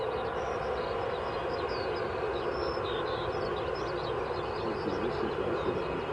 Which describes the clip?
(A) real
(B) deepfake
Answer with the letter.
A